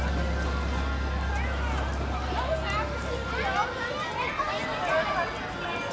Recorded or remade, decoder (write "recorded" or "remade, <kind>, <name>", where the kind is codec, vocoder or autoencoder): recorded